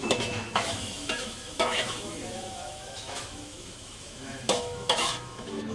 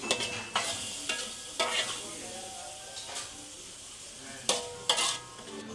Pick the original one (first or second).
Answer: second